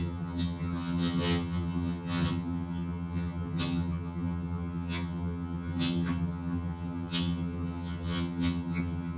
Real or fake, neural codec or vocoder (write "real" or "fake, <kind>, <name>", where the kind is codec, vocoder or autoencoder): fake, vocoder, HiFi-GAN